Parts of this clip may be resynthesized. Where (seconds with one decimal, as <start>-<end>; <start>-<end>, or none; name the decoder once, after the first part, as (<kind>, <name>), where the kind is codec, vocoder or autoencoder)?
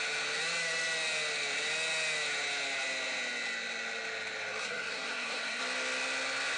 4.6-5.6 (codec, SNAC)